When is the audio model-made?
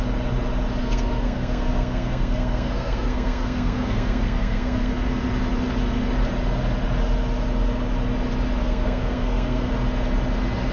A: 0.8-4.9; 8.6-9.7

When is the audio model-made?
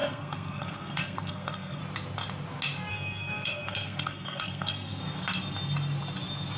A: 0.0-1.8; 2.9-5.0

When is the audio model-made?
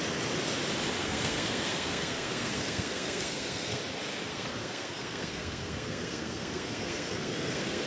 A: 1.0-3.8; 4.3-7.9